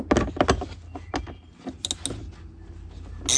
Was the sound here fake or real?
real